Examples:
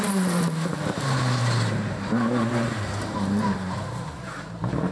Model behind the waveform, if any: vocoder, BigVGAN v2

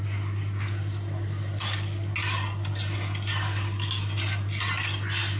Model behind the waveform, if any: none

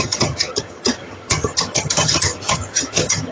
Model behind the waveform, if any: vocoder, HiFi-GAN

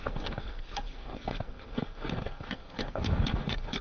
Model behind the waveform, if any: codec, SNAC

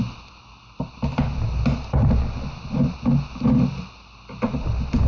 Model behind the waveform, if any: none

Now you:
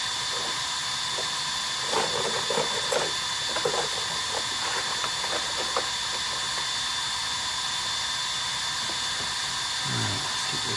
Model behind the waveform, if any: none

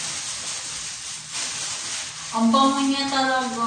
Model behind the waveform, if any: none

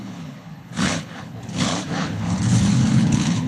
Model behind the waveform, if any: codec, HILCodec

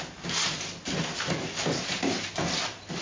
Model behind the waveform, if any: none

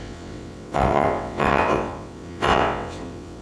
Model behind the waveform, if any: vocoder, WaveNeXt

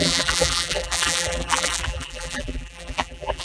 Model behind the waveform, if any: vocoder, BigVGAN v2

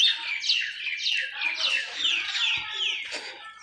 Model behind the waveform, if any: none